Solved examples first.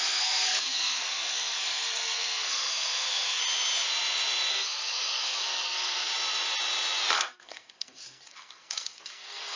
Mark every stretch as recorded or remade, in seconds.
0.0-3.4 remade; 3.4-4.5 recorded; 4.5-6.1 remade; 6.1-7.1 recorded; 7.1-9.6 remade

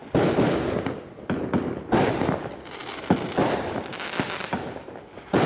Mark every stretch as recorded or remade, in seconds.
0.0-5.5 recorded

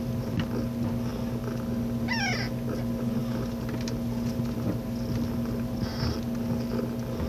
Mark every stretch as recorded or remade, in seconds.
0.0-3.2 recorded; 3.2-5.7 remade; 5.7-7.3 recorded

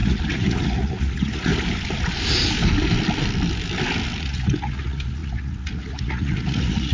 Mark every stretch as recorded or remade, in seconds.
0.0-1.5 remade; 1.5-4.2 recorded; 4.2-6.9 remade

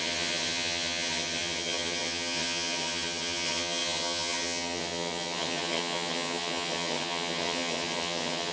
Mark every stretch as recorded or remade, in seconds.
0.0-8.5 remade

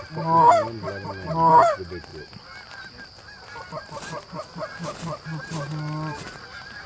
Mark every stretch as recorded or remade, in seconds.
0.0-6.9 recorded

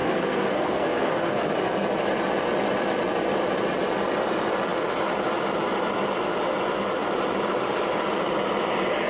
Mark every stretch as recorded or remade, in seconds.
0.0-1.5 remade; 1.5-9.1 recorded

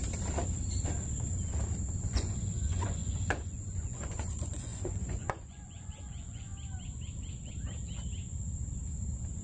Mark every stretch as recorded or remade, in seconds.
0.0-2.0 recorded; 2.0-6.5 remade; 6.5-9.4 recorded